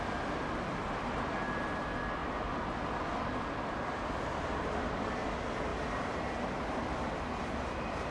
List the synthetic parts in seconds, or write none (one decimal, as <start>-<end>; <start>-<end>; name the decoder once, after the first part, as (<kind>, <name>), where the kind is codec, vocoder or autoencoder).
5.7-6.2 (vocoder, BigVGAN v2)